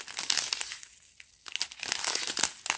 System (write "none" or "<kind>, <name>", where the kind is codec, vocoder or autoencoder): none